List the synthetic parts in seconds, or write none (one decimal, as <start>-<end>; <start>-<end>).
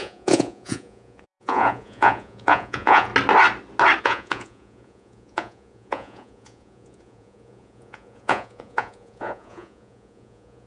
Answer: 0.0-3.1; 4.0-10.7